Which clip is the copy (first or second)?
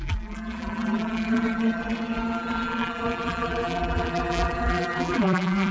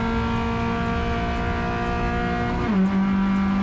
first